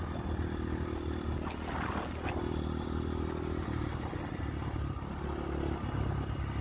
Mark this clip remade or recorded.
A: recorded